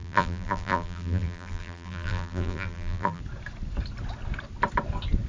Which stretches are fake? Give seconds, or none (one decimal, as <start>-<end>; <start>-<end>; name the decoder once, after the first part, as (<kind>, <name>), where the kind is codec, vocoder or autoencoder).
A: 0.0-3.2 (vocoder, BigVGAN v2)